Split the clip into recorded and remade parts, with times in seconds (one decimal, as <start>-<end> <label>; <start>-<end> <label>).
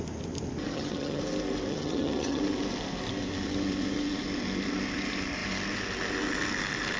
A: 0.0-0.7 recorded; 0.7-1.2 remade; 1.2-1.7 recorded; 1.7-2.4 remade; 2.4-7.0 recorded